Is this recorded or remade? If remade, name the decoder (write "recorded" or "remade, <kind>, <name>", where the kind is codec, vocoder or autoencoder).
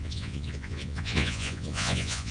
remade, vocoder, Vocos